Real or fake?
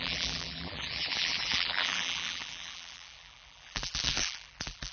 fake